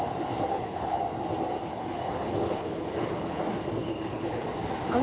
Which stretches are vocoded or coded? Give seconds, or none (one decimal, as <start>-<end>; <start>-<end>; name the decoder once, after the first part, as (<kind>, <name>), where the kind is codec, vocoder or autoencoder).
0.5-1.0 (codec, HILCodec); 1.7-3.4; 3.8-4.5